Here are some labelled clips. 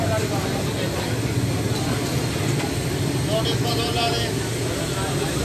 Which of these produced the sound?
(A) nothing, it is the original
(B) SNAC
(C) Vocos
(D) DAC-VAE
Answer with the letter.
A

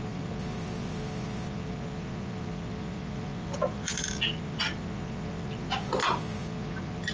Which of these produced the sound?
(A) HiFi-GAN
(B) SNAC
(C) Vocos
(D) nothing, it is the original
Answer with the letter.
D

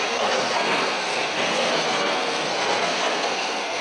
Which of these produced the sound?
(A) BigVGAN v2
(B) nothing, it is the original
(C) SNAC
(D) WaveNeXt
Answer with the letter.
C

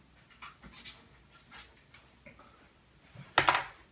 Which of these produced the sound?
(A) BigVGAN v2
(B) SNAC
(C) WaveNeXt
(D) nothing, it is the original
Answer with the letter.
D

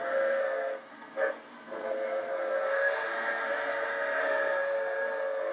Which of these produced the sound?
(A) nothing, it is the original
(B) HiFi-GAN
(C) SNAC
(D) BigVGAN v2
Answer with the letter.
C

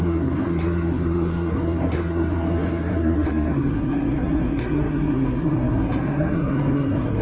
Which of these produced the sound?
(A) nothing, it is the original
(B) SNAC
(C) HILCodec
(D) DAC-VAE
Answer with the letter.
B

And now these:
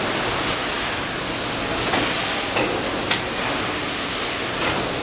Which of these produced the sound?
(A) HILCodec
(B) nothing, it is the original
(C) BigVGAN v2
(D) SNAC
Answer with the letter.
B